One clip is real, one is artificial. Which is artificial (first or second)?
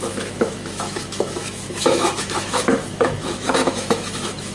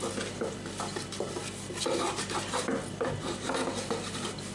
first